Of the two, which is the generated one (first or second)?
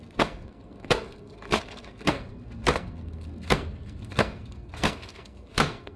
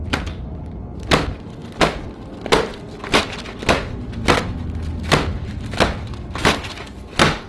first